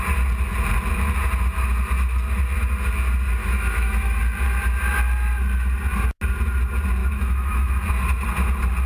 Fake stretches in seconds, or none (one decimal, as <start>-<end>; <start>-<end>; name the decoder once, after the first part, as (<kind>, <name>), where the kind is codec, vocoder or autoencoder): 3.4-4.2 (autoencoder, DAC-VAE); 7.0-7.7